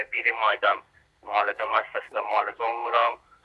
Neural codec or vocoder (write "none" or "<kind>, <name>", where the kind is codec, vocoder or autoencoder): codec, SNAC